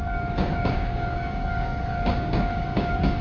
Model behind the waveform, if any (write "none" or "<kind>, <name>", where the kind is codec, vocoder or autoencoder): codec, DAC